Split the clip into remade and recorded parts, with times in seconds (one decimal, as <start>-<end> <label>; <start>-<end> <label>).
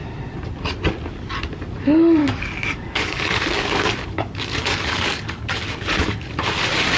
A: 0.0-2.2 recorded; 2.2-6.4 remade; 6.4-7.0 recorded